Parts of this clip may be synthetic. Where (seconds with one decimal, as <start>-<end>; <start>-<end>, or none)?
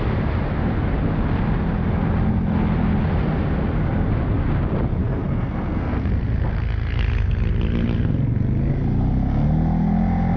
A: 5.0-6.1